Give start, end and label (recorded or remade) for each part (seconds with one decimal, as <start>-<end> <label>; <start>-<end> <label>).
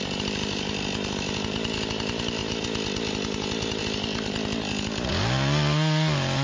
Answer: 0.0-6.4 recorded